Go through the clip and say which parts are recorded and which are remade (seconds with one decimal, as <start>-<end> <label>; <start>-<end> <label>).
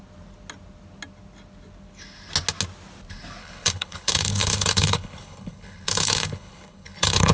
0.0-3.4 recorded; 3.4-7.3 remade